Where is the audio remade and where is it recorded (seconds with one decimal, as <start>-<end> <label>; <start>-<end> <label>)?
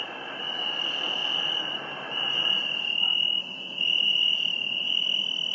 0.0-5.5 recorded